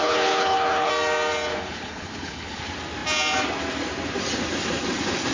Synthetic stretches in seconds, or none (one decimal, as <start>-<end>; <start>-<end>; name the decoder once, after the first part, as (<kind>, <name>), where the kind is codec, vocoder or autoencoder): 0.0-0.9 (codec, HILCodec); 1.5-2.6